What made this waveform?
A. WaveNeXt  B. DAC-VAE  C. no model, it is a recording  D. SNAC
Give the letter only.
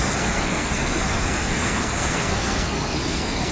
D